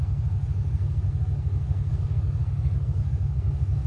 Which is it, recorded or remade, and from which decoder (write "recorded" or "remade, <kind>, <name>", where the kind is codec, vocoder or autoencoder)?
remade, codec, SNAC